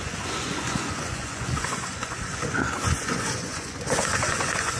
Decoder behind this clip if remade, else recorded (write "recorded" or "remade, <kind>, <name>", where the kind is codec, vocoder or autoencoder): remade, vocoder, Vocos